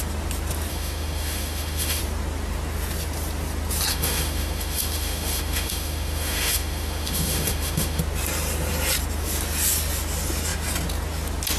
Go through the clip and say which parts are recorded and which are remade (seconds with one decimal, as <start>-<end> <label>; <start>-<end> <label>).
0.0-0.7 recorded; 0.7-2.0 remade; 2.0-3.9 recorded; 3.9-8.0 remade; 8.0-11.6 recorded